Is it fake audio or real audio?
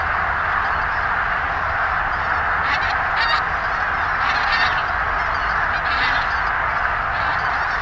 real